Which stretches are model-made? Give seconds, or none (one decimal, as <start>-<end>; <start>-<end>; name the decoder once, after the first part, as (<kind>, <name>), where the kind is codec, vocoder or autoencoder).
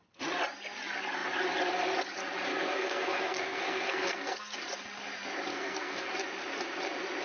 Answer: 2.5-4.4 (codec, SNAC); 5.5-6.1